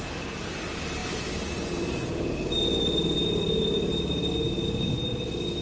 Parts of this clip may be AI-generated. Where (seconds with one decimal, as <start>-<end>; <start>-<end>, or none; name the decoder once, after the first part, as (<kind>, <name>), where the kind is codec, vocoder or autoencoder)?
none